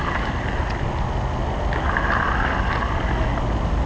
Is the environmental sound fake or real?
real